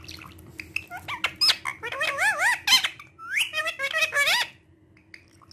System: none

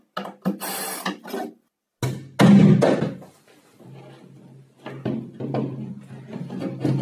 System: none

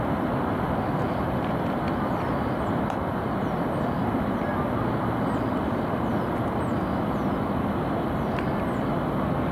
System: none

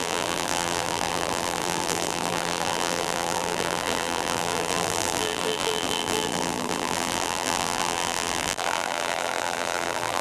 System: vocoder, BigVGAN v2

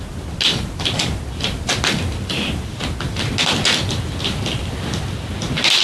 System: none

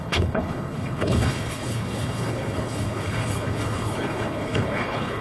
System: codec, HILCodec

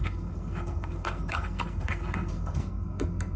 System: codec, SNAC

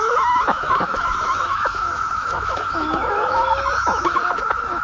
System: autoencoder, DAC-VAE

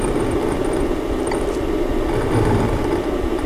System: vocoder, BigVGAN v2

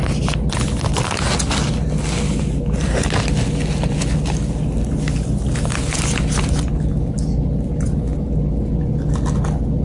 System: none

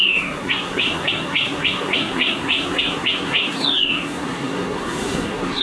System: codec, SNAC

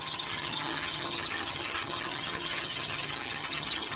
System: vocoder, HiFi-GAN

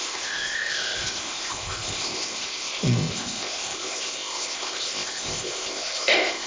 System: codec, ZipCodec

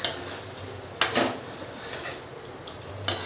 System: none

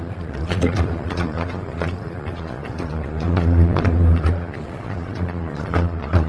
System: vocoder, Vocos